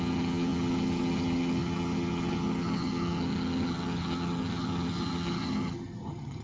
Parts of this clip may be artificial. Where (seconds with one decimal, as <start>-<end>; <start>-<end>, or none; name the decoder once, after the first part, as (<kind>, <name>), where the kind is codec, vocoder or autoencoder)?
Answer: 0.0-6.4 (vocoder, HiFi-GAN)